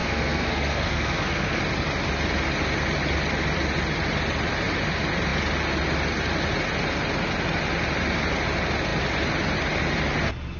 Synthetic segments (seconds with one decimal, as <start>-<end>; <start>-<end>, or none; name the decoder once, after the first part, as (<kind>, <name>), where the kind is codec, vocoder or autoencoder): 0.0-1.6 (codec, SNAC)